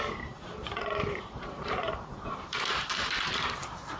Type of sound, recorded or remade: remade